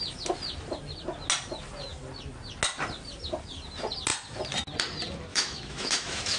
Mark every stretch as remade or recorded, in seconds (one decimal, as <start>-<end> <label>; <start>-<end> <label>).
0.0-5.3 recorded; 5.3-6.4 remade